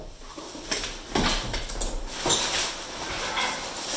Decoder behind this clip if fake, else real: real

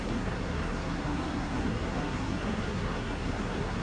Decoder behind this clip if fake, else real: fake, codec, SNAC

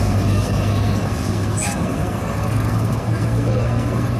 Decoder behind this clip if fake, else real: fake, codec, SNAC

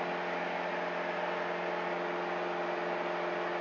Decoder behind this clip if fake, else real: real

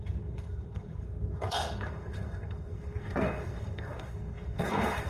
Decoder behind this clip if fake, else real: fake, codec, SNAC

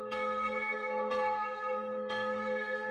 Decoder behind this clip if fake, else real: fake, codec, SNAC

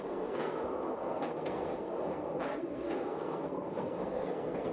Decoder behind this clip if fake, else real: fake, codec, SNAC